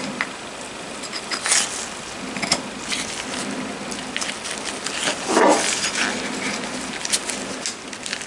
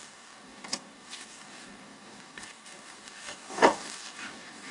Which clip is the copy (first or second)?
second